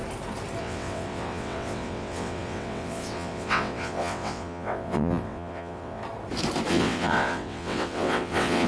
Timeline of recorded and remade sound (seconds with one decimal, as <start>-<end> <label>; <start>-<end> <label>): 0.0-0.6 recorded; 0.6-6.0 remade; 6.0-6.7 recorded; 6.7-8.7 remade